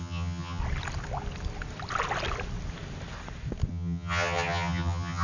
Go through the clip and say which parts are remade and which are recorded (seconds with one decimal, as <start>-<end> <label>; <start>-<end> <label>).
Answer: 0.0-0.6 remade; 0.6-3.7 recorded; 3.7-5.2 remade